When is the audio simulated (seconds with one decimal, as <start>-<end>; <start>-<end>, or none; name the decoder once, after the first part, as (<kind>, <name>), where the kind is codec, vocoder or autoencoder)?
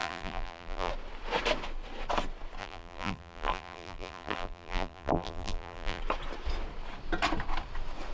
0.0-0.9 (vocoder, BigVGAN v2); 2.6-6.0